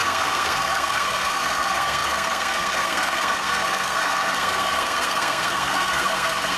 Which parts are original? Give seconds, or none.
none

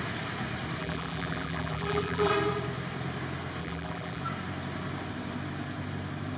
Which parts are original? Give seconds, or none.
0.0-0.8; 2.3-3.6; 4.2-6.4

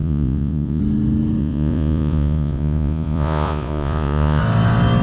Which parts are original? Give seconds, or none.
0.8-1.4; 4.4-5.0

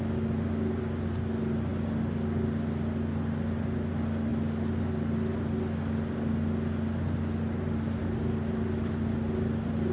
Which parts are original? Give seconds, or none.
0.0-9.9